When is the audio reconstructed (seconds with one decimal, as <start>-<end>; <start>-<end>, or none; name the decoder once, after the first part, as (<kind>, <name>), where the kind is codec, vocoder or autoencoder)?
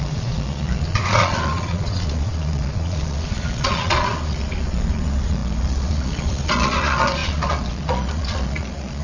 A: 0.0-9.0 (vocoder, Vocos)